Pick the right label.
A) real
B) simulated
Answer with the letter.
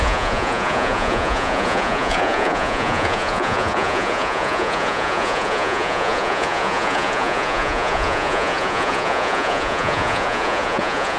B